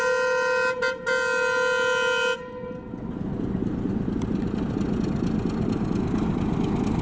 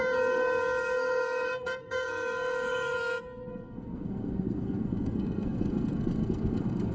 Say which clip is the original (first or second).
first